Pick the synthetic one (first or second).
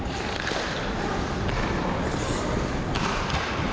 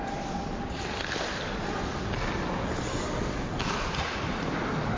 first